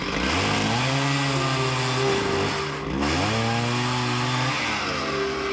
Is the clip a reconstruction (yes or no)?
no